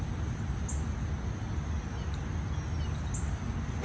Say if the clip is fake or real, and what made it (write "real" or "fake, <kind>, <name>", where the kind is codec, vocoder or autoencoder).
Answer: real